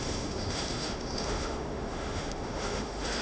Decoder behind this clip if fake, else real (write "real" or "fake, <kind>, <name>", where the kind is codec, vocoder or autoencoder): fake, autoencoder, DAC-VAE